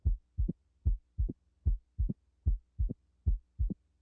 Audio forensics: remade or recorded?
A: recorded